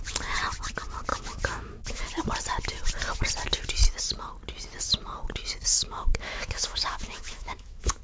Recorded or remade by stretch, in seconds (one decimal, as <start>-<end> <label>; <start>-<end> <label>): 0.0-1.1 recorded; 1.1-2.0 remade; 2.0-5.7 recorded; 5.7-8.0 remade